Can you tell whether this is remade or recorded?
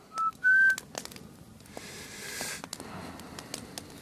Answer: recorded